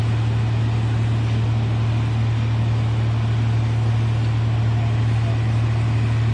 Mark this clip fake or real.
real